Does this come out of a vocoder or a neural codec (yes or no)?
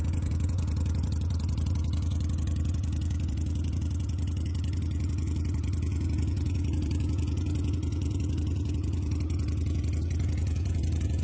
yes